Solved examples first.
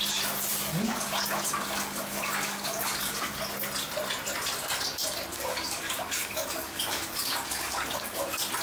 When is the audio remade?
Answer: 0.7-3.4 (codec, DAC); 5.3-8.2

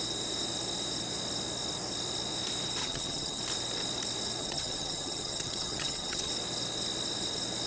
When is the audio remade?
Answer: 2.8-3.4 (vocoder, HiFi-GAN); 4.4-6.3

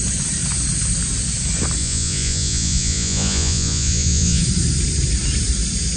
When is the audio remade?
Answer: 1.8-4.4 (vocoder, Vocos)

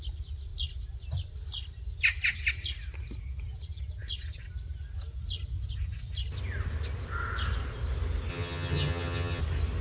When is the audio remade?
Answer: 8.3-9.4 (vocoder, HiFi-GAN)

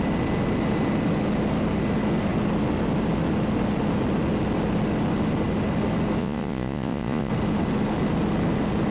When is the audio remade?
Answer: 6.2-7.3 (vocoder, Vocos)

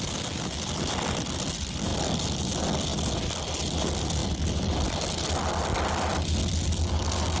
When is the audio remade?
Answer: none

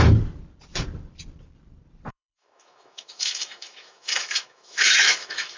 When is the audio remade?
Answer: 2.1-5.6 (autoencoder, DAC-VAE)